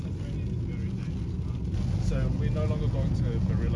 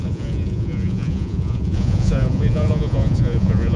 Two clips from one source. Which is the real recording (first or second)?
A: first